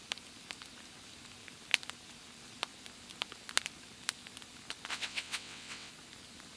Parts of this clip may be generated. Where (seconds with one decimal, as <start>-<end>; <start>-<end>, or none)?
4.9-5.9